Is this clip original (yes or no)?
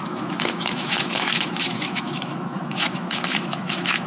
no